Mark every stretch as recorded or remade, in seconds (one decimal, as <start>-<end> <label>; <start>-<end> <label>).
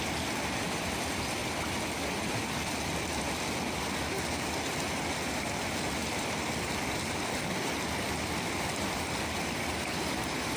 0.0-1.4 remade; 1.4-5.1 recorded; 5.1-10.6 remade